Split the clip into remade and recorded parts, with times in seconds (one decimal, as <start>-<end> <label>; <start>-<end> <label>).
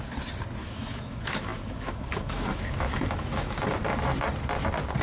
0.0-0.6 recorded; 0.6-3.6 remade; 3.6-5.0 recorded